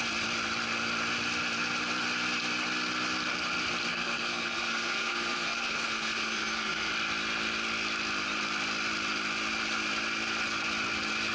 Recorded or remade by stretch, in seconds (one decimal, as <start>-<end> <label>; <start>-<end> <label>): 0.0-3.9 recorded; 3.9-6.9 remade; 6.9-11.3 recorded